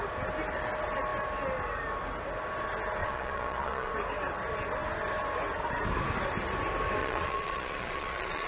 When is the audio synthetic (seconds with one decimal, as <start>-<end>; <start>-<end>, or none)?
3.0-3.9; 7.0-8.5